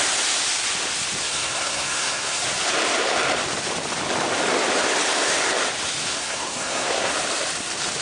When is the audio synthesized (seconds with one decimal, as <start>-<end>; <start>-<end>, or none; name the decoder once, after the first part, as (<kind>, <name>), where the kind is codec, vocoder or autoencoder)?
1.2-2.4 (codec, SNAC); 6.1-7.1